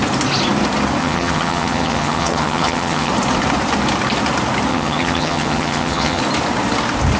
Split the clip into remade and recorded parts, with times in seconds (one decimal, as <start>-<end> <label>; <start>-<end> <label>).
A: 0.0-1.0 recorded; 1.0-3.1 remade; 3.1-4.7 recorded; 4.7-6.2 remade; 6.2-7.2 recorded